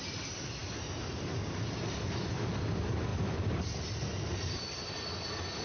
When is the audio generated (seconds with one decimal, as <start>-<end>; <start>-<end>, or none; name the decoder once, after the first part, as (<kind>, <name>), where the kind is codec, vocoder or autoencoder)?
3.1-4.9 (vocoder, BigVGAN v2)